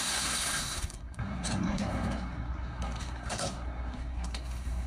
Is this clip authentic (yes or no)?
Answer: no